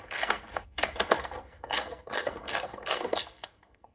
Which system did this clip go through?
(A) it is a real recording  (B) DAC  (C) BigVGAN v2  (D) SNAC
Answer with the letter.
D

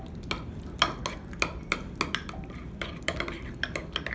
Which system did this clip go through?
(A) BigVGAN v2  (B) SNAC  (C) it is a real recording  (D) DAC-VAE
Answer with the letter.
C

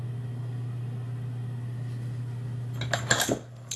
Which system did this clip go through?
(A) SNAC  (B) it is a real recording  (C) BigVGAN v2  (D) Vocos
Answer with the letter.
B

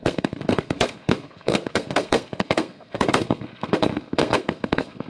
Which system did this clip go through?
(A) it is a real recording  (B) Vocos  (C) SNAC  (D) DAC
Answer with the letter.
C